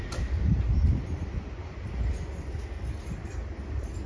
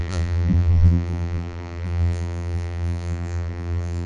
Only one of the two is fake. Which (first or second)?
second